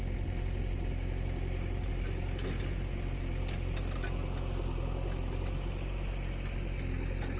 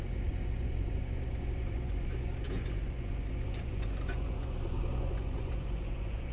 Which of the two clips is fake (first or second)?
second